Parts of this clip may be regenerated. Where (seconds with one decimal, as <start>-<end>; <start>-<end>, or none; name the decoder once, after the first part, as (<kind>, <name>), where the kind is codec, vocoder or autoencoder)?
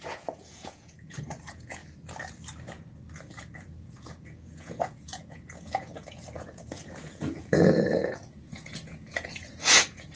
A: 0.0-1.8 (vocoder, Vocos); 3.6-10.2